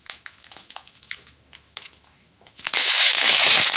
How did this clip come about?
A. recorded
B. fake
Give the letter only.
B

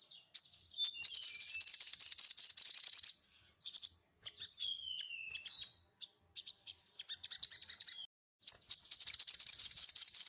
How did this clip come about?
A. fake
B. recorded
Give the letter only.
B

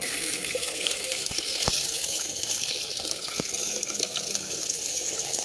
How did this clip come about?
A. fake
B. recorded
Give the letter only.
A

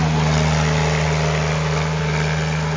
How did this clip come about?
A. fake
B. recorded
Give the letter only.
B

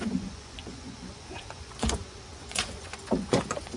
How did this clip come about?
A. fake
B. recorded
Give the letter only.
A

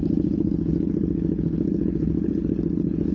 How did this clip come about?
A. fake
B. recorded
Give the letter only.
A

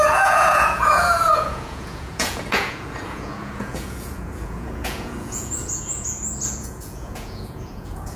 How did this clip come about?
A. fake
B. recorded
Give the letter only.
A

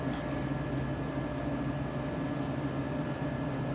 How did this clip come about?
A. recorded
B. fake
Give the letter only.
A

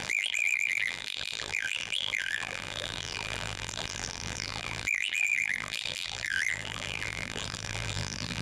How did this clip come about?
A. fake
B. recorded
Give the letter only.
A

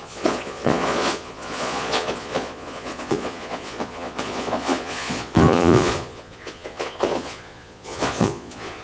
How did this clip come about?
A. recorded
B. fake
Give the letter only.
B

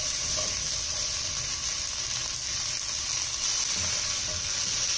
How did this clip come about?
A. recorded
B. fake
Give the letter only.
A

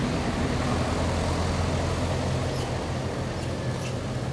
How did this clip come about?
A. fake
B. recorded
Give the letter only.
B